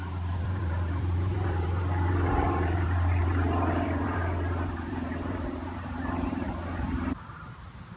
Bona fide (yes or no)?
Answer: no